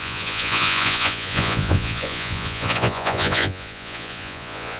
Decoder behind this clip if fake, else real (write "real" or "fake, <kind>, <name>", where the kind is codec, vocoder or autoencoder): fake, vocoder, Vocos